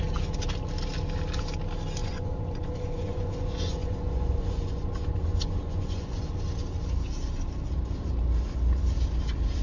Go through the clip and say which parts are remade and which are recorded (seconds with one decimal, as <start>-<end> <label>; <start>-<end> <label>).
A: 0.0-2.0 recorded; 2.0-6.2 remade; 6.2-9.6 recorded

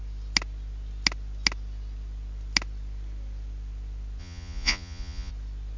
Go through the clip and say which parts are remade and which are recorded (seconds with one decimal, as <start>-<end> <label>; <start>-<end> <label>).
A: 0.0-4.2 recorded; 4.2-5.3 remade; 5.3-5.8 recorded

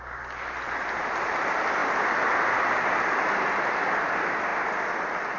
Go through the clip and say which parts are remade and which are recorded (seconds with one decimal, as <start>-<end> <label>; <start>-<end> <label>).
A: 0.0-5.4 recorded

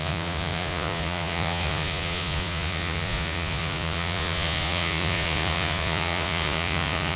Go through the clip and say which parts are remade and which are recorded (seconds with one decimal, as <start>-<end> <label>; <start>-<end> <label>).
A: 0.0-7.2 remade